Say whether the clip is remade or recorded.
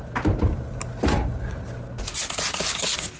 recorded